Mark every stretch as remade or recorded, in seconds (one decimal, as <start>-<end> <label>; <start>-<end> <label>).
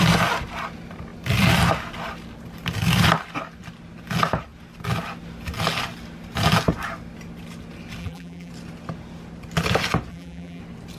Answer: 0.0-8.0 recorded; 8.0-8.5 remade; 8.5-10.1 recorded; 10.1-10.6 remade; 10.6-11.0 recorded